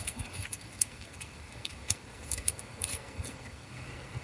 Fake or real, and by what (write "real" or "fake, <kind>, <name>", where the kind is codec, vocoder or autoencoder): fake, codec, SNAC